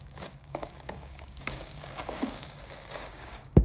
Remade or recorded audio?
remade